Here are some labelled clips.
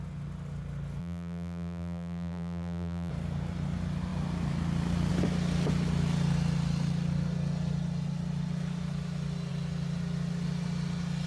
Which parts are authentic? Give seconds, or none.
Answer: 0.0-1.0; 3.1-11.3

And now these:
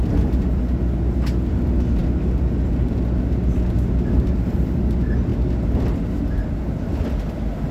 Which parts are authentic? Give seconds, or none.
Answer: 0.0-7.7

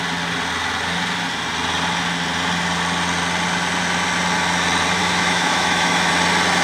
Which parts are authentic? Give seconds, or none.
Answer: 0.0-5.0; 6.1-6.6

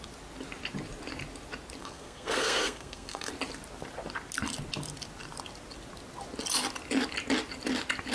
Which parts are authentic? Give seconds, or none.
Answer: 0.0-1.8; 3.3-8.1

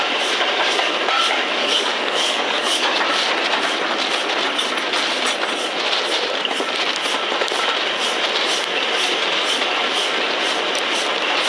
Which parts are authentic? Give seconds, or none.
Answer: 0.0-1.6; 3.0-11.5